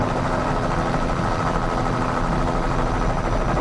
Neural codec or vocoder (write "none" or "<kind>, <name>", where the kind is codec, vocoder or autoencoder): none